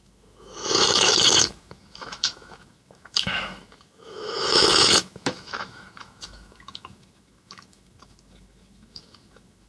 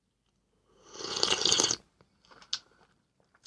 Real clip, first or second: second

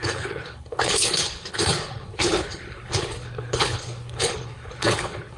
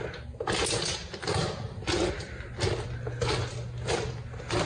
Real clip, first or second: second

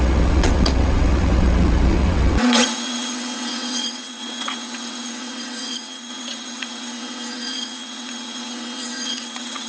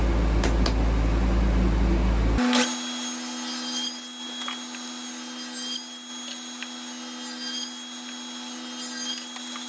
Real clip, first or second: second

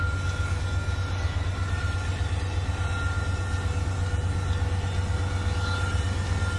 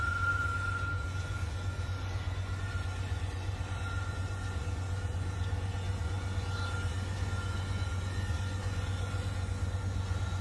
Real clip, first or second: first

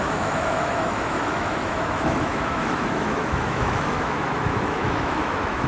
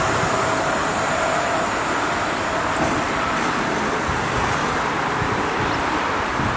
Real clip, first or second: second